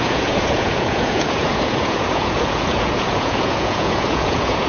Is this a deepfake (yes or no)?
yes